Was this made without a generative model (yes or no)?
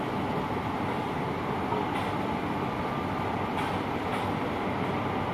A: yes